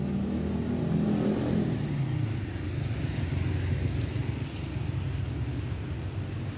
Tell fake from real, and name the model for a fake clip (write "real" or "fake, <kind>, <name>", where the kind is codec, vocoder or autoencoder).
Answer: real